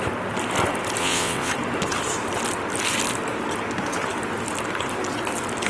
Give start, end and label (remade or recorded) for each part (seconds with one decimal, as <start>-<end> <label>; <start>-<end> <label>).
0.0-1.0 recorded; 1.0-1.5 remade; 1.5-5.7 recorded